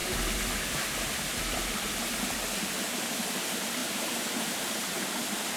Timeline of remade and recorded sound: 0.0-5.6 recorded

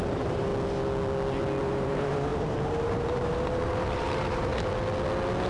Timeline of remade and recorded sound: 0.0-0.5 remade; 0.5-1.6 recorded; 1.6-4.5 remade; 4.5-5.5 recorded

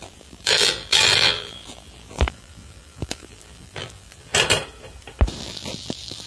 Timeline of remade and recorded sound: 0.0-4.3 remade; 4.3-5.4 recorded; 5.4-6.3 remade

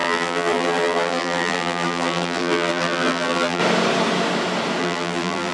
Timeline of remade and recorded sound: 0.0-3.6 remade; 3.6-4.8 recorded; 4.8-5.5 remade